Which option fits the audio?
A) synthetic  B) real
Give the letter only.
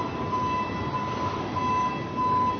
B